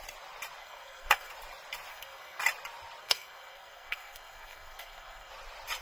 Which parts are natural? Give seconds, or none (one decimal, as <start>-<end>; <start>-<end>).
0.0-0.6; 1.3-1.9; 2.4-3.0; 5.3-5.8